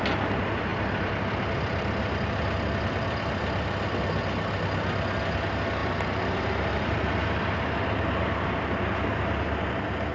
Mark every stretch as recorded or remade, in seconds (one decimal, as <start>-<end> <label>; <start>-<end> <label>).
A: 0.0-5.8 recorded; 5.8-7.5 remade; 7.5-10.1 recorded